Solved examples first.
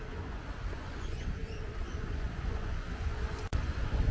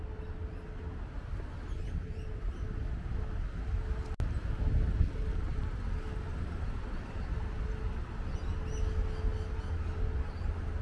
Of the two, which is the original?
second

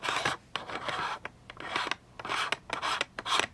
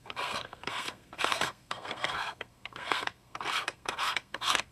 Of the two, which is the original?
first